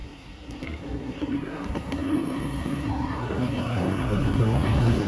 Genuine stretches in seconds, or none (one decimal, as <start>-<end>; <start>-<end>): none